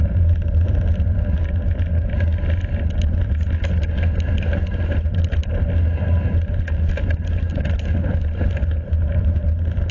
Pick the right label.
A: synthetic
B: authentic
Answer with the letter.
B